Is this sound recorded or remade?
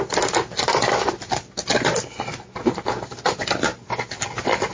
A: recorded